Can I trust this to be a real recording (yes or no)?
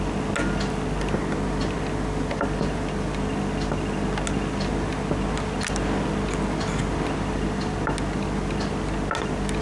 yes